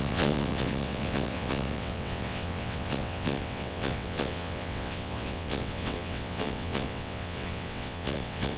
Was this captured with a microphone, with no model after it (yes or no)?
no